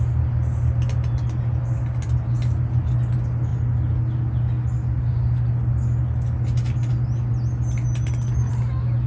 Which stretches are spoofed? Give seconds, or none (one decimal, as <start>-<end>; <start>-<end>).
none